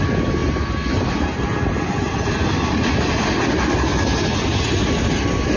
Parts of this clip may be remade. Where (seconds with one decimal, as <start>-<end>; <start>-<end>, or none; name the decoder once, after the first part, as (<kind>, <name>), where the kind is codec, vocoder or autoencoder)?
none